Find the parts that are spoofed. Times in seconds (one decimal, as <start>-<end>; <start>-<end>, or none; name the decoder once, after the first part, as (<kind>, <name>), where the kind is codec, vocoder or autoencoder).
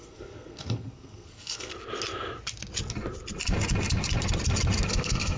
0.0-1.7 (codec, SNAC); 4.9-5.4